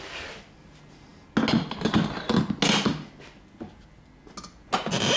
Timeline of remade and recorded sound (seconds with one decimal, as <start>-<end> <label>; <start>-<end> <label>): 0.0-5.2 recorded